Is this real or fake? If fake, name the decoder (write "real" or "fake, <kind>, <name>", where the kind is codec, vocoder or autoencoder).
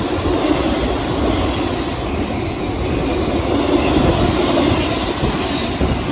real